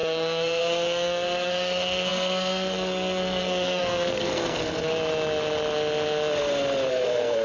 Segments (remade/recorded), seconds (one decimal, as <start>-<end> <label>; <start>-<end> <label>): 0.0-4.9 remade; 4.9-6.9 recorded; 6.9-7.4 remade